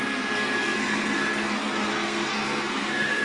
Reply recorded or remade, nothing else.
remade